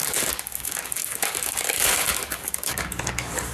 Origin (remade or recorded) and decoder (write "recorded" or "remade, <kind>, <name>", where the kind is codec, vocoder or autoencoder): remade, codec, DAC